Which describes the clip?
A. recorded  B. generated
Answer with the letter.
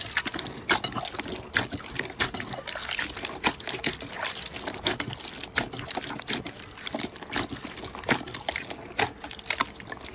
A